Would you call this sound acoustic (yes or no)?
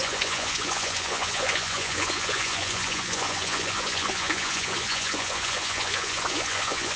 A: no